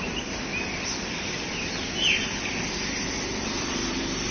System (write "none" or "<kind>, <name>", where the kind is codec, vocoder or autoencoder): none